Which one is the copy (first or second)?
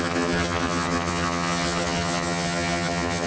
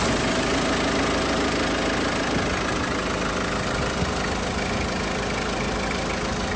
first